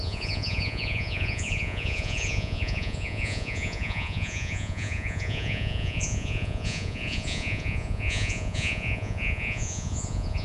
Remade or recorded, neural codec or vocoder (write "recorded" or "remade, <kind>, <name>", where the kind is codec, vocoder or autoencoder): remade, vocoder, Vocos